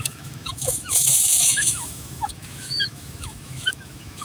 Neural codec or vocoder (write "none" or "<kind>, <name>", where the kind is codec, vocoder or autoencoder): autoencoder, DAC-VAE